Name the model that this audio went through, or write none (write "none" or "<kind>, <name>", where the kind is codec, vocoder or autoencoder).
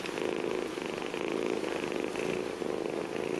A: none